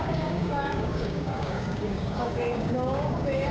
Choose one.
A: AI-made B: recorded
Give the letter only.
A